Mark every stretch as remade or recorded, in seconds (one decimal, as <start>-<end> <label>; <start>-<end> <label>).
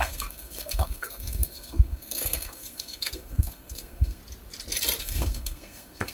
0.0-4.2 remade; 4.2-5.0 recorded; 5.0-6.1 remade